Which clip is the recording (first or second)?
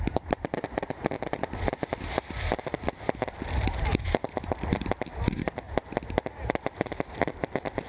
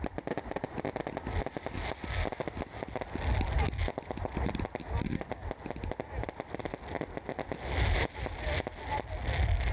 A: second